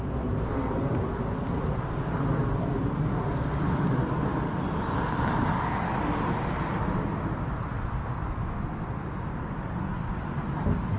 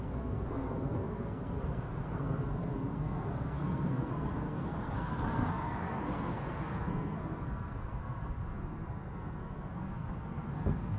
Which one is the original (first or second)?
first